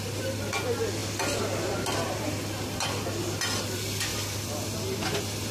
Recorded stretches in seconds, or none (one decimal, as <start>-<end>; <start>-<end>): 0.0-1.0; 2.2-4.1